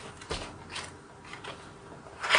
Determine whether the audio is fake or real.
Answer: real